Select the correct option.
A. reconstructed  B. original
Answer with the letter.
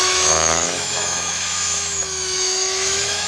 A